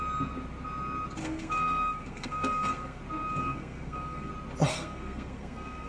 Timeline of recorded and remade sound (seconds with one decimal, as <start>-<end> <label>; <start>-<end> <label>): 0.0-1.2 recorded; 1.2-3.0 remade; 3.0-3.4 recorded; 3.4-4.3 remade; 4.3-4.7 recorded; 4.7-5.9 remade